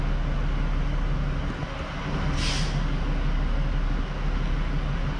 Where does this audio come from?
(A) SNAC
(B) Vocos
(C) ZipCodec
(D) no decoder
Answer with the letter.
D